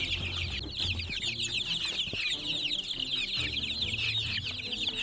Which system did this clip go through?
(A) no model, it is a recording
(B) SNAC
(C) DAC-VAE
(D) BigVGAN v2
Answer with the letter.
A